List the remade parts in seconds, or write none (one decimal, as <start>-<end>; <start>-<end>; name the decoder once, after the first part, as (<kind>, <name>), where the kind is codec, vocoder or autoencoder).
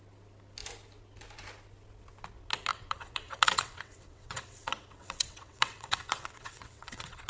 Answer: 2.7-7.3 (vocoder, WaveNeXt)